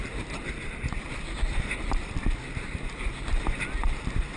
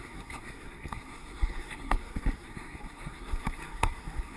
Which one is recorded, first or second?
first